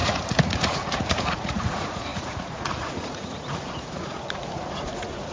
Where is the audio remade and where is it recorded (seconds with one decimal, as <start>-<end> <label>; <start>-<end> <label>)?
0.0-5.3 remade